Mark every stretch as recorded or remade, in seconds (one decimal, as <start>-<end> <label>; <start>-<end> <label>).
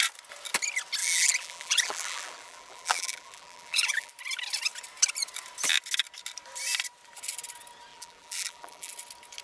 0.0-1.0 recorded; 1.0-4.1 remade; 4.1-7.9 recorded; 7.9-8.9 remade; 8.9-9.4 recorded